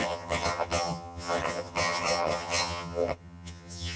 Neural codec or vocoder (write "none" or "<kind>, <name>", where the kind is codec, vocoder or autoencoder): vocoder, HiFi-GAN